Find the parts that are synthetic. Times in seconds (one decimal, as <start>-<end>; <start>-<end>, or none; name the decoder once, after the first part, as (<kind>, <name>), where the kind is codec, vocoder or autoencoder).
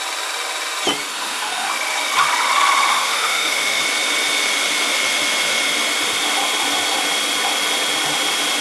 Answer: 1.1-1.7 (autoencoder, DAC-VAE); 2.9-3.8